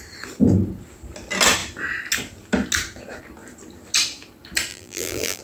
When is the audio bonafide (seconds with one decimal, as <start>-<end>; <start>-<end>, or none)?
0.0-4.7